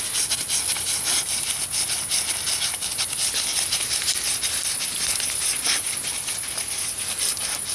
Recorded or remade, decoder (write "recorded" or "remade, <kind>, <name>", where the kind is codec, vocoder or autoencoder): recorded